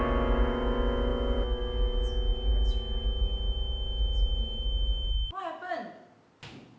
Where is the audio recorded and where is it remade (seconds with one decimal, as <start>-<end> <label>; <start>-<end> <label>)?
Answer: 0.0-6.8 recorded